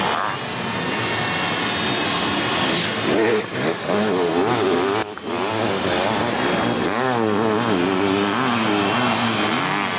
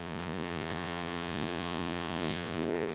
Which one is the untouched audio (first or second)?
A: first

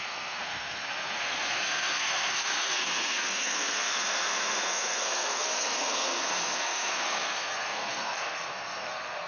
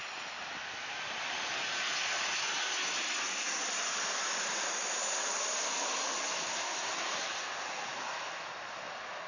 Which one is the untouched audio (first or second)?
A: second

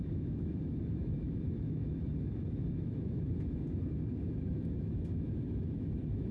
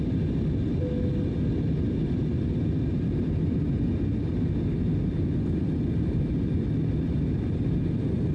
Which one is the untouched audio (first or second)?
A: second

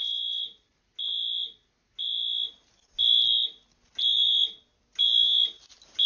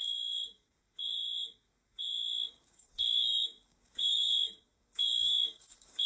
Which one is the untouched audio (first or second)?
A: first